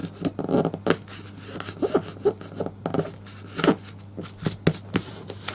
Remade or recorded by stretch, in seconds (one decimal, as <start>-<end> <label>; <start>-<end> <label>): 0.0-5.5 recorded

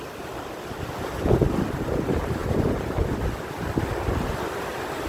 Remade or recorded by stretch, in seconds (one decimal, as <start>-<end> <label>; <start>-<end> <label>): 0.0-5.1 recorded

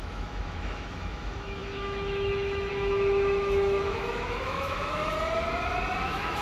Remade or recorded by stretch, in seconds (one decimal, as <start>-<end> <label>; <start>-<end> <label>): 0.0-5.0 remade; 5.0-6.0 recorded; 6.0-6.4 remade

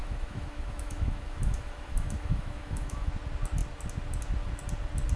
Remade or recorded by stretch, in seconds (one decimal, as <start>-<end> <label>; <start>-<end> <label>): 0.0-3.1 remade; 3.1-5.2 recorded

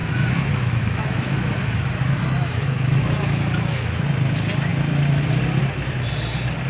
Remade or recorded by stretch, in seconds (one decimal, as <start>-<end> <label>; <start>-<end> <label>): 0.0-4.0 remade; 4.0-6.7 recorded

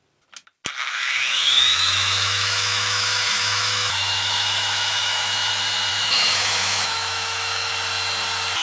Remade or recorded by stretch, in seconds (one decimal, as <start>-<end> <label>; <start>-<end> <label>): 0.0-0.8 recorded; 0.8-5.5 remade; 5.5-5.9 recorded; 5.9-7.7 remade; 7.7-8.6 recorded